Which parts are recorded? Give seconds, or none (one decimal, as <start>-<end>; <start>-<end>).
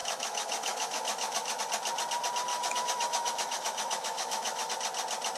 1.6-2.5; 4.7-5.4